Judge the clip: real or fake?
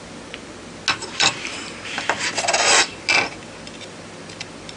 real